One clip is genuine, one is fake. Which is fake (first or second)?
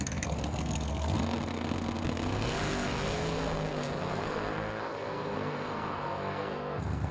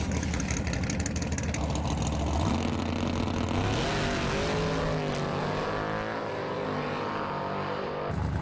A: first